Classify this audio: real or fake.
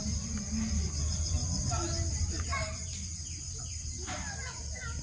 real